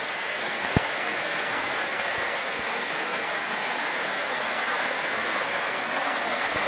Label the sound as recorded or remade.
remade